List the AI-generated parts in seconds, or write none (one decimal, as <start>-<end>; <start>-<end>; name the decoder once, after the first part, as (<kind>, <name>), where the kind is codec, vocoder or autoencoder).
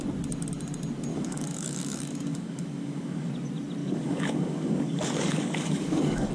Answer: 1.1-3.3 (codec, DAC); 3.8-6.3